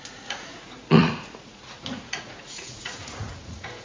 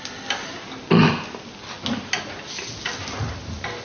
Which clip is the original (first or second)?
second